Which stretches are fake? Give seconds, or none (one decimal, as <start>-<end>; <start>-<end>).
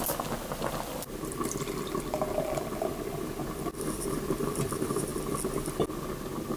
none